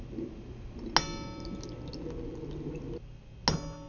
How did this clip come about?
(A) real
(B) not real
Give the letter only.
A